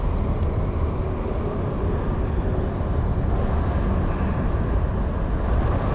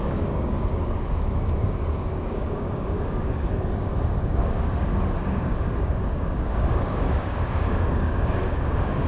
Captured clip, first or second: first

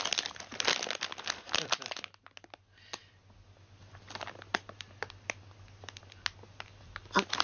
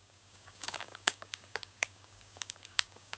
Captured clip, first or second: first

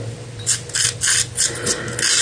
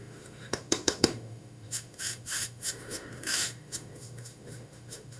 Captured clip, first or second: first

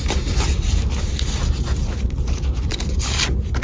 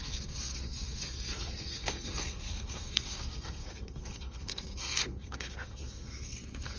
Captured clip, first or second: first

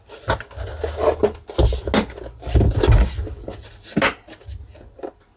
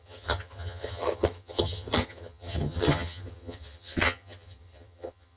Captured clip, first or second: first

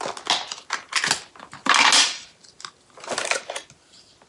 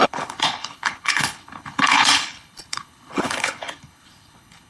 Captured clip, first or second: first